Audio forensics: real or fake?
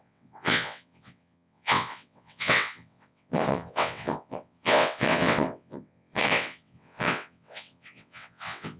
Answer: fake